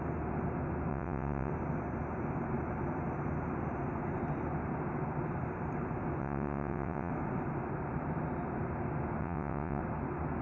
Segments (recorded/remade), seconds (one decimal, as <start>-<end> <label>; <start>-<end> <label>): 0.0-0.9 recorded; 0.9-1.5 remade; 1.5-6.2 recorded; 6.2-7.1 remade; 7.1-9.2 recorded; 9.2-9.8 remade; 9.8-10.4 recorded